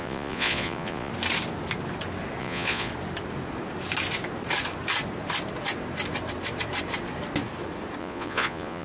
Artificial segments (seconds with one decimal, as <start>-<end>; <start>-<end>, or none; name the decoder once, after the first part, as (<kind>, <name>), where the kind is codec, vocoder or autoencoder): 0.0-1.1 (vocoder, Vocos); 2.4-2.9; 8.0-8.8